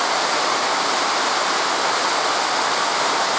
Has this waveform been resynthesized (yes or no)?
no